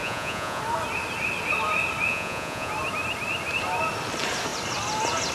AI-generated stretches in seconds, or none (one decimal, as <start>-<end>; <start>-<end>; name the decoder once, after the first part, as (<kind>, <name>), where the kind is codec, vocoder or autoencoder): 0.0-0.6 (vocoder, Vocos); 2.1-2.7